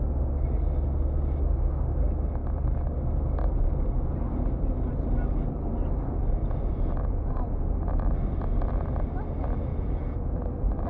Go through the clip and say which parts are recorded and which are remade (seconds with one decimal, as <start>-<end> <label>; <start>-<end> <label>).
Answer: 0.0-6.4 recorded; 6.4-7.7 remade; 7.7-9.7 recorded; 9.7-10.4 remade; 10.4-10.9 recorded